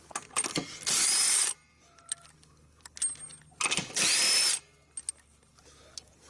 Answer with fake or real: real